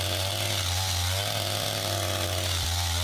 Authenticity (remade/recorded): recorded